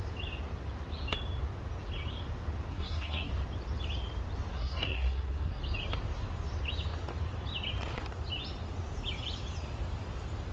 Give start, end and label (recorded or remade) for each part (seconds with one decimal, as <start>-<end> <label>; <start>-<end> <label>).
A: 0.0-2.7 recorded; 2.7-3.3 remade; 3.3-4.5 recorded; 4.5-5.6 remade; 5.6-10.5 recorded